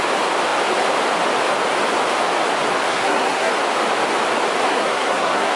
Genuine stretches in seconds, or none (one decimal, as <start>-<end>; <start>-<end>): 0.0-2.9; 3.5-4.7